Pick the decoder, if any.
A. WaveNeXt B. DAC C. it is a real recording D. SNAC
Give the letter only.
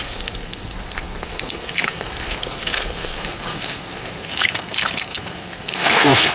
D